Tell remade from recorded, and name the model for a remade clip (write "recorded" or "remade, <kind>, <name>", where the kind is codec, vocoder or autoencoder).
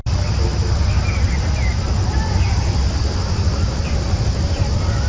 recorded